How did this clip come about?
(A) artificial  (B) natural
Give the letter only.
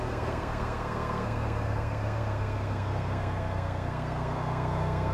A